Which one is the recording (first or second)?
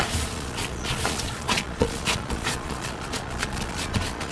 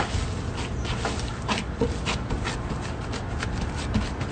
second